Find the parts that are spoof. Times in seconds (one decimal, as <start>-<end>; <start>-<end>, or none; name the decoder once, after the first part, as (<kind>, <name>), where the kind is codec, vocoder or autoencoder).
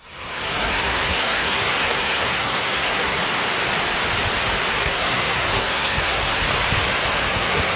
0.0-3.2 (codec, SNAC); 4.7-6.4; 7.3-7.8